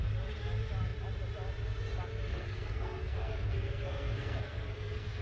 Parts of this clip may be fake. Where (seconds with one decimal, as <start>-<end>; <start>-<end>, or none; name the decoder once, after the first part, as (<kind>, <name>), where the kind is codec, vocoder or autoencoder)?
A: 2.3-5.2 (codec, SNAC)